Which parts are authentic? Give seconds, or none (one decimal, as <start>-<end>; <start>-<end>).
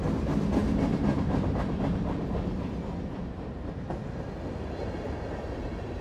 0.0-6.0